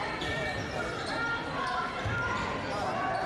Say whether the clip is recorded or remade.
remade